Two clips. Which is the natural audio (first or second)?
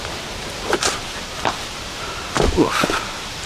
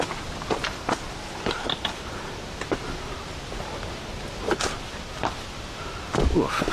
second